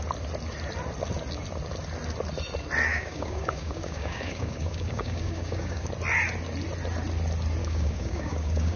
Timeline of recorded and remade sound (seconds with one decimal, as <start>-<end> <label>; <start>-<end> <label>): 0.0-2.9 recorded; 2.9-5.9 remade; 5.9-7.6 recorded; 7.6-8.8 remade